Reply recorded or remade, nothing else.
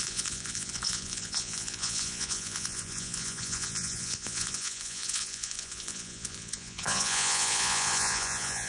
remade